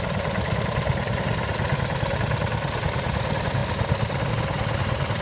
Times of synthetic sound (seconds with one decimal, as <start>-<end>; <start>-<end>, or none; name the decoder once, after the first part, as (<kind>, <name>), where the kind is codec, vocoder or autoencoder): none